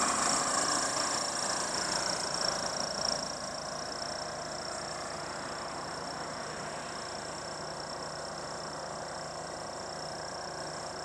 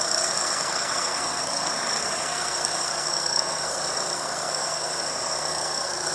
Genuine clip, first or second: first